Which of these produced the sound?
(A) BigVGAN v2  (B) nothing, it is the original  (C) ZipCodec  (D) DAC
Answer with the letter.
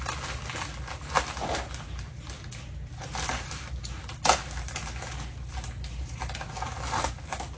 B